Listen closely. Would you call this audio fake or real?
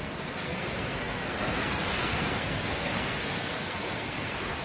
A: fake